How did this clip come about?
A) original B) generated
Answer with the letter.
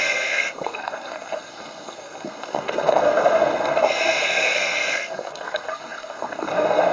B